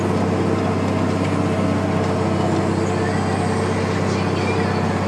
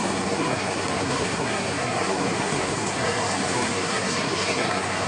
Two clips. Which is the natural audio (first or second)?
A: first